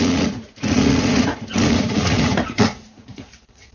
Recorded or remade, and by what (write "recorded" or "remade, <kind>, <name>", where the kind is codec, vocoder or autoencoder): remade, vocoder, Vocos